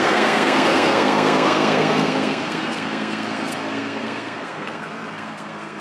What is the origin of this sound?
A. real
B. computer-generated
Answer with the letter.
B